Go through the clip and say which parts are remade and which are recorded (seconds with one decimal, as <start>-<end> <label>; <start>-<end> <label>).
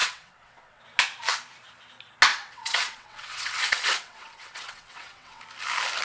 0.0-0.8 remade; 0.8-2.3 recorded; 2.3-5.4 remade; 5.4-6.0 recorded